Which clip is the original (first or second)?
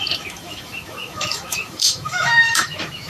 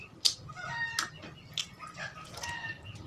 second